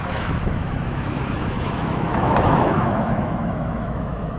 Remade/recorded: remade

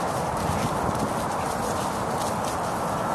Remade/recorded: recorded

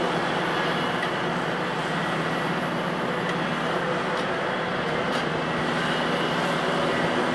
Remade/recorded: recorded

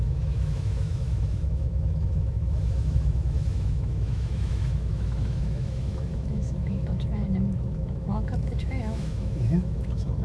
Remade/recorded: remade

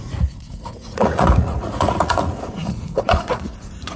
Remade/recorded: remade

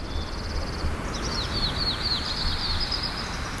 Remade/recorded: recorded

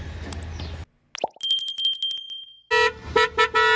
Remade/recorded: recorded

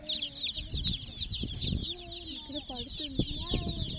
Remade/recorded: recorded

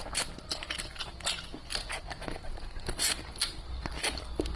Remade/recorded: recorded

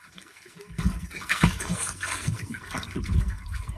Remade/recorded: remade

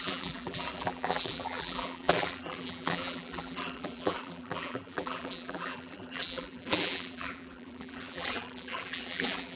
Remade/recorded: remade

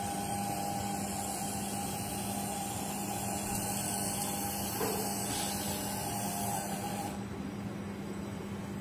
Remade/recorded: recorded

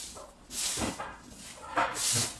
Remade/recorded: recorded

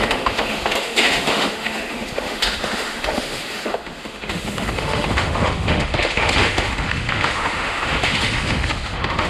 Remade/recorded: remade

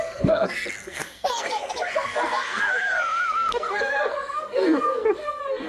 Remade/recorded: remade